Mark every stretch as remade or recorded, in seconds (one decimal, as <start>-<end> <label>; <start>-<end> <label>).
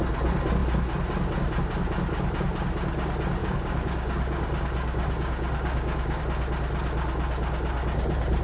0.0-3.4 recorded; 3.4-6.2 remade; 6.2-8.4 recorded